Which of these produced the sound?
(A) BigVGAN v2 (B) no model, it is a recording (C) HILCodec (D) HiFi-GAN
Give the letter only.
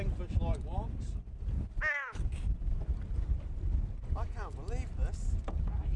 B